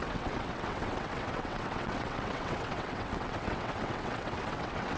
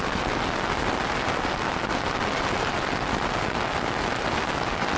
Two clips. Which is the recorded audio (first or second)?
second